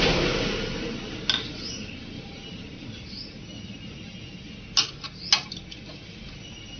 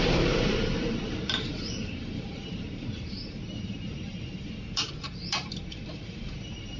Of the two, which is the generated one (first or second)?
second